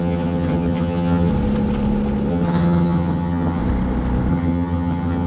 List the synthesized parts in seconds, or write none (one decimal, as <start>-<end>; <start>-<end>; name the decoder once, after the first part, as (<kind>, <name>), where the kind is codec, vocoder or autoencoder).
0.0-1.3 (vocoder, HiFi-GAN); 2.3-3.6; 4.3-5.3